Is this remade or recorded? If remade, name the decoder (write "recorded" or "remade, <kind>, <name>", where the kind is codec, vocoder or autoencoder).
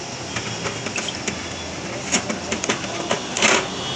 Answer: recorded